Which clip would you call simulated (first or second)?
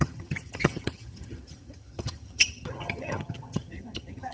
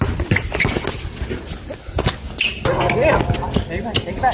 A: first